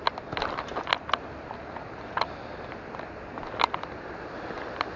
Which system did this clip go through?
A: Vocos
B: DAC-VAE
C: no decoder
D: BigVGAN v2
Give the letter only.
C